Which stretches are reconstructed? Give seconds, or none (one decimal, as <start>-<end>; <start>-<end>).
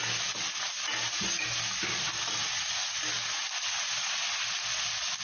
2.4-3.0